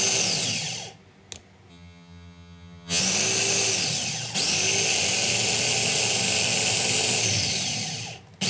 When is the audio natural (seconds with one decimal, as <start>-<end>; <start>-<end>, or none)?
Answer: 0.0-1.7; 3.0-8.5